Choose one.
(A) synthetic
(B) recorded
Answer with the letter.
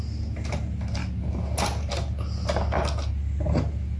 B